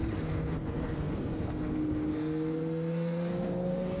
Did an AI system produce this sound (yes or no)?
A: yes